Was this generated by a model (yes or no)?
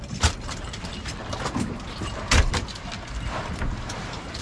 no